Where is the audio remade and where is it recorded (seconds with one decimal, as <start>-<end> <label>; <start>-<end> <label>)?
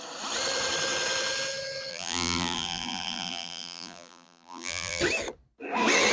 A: 0.0-1.9 recorded; 1.9-5.0 remade; 5.0-6.1 recorded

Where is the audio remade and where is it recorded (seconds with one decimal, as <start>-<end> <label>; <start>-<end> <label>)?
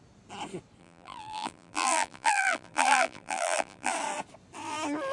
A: 0.0-0.8 recorded; 0.8-3.9 remade; 3.9-5.1 recorded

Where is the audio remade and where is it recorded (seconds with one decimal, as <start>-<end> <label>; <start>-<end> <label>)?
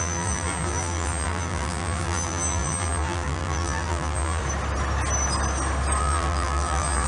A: 0.0-4.4 remade; 4.4-6.0 recorded; 6.0-7.1 remade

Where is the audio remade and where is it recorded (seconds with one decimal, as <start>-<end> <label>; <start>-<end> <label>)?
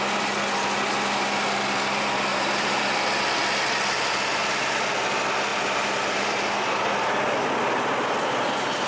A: 0.0-2.3 recorded; 2.3-2.8 remade; 2.8-5.5 recorded; 5.5-6.8 remade; 6.8-8.9 recorded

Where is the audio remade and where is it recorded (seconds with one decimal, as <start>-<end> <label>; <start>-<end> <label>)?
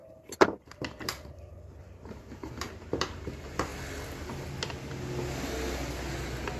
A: 0.0-3.3 remade; 3.3-6.6 recorded